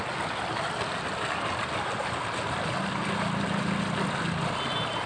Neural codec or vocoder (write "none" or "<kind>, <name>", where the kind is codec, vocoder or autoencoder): none